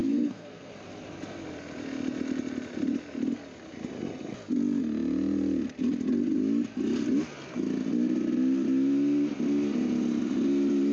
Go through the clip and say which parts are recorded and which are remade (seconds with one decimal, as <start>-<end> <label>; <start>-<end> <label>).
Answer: 0.0-0.7 remade; 0.7-10.9 recorded